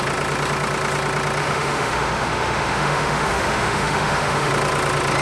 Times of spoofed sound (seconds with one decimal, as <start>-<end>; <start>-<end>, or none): 1.4-4.5